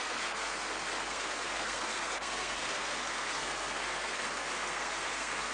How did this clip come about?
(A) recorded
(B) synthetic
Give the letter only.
B